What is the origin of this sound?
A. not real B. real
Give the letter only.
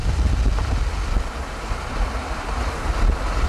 B